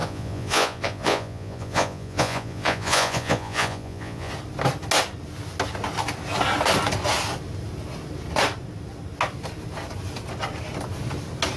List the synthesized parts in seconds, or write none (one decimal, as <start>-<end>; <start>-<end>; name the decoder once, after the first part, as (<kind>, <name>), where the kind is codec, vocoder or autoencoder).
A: 0.0-4.3 (vocoder, Vocos)